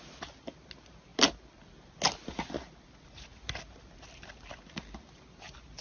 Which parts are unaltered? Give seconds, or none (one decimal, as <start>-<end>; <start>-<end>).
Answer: 0.0-5.8